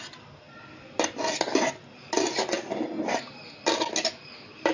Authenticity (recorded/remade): recorded